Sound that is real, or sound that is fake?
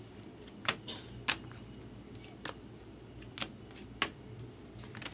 real